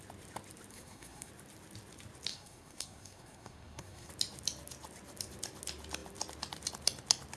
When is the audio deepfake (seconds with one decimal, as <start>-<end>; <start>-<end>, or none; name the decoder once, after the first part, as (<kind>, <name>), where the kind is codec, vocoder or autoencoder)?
0.7-1.3 (codec, SNAC); 2.3-4.1